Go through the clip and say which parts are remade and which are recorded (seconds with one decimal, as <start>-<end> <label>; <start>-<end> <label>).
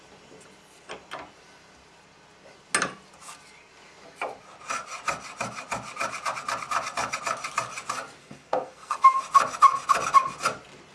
0.0-8.2 recorded; 8.2-9.2 remade; 9.2-10.9 recorded